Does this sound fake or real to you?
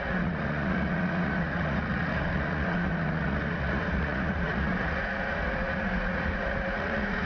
fake